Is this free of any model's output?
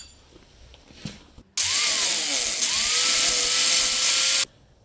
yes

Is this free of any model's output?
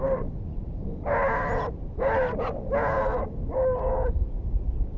yes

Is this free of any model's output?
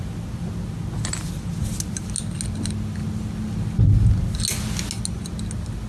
yes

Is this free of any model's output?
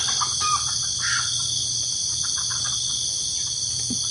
yes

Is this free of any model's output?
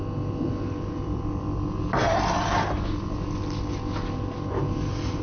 yes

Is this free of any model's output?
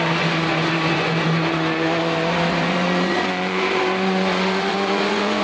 no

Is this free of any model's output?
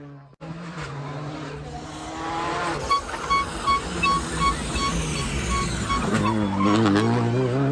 yes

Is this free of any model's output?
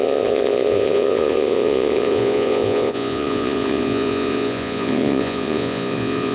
no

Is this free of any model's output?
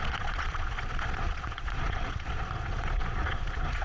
no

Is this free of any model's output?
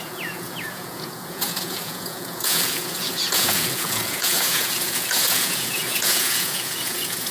no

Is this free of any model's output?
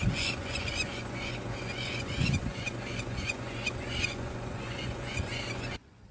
no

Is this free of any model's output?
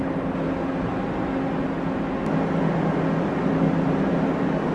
yes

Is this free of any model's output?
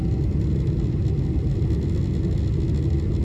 yes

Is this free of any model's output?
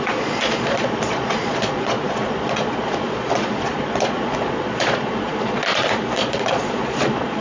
no